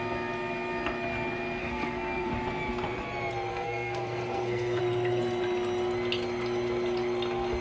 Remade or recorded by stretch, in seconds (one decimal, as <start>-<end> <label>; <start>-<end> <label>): 0.0-1.6 recorded; 1.6-2.3 remade; 2.3-3.5 recorded; 3.5-4.8 remade; 4.8-7.6 recorded

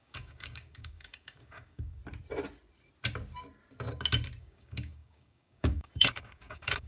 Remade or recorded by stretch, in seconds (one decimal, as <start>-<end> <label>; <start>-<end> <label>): 0.0-2.0 remade; 2.0-4.4 recorded; 4.4-6.9 remade

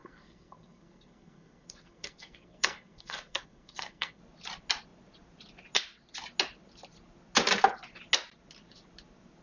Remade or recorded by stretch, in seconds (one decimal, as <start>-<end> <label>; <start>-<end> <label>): 0.0-4.2 remade; 4.2-9.4 recorded

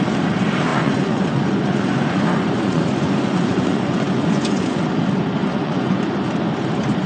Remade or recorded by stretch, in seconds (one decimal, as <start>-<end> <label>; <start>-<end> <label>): 0.0-0.7 recorded; 0.7-4.8 remade; 4.8-5.4 recorded; 5.4-6.1 remade; 6.1-7.1 recorded